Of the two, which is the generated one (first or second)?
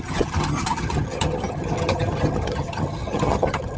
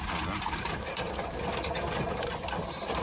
first